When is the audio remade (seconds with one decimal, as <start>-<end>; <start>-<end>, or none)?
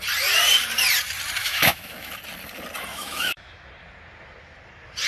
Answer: 1.4-2.1; 2.9-3.7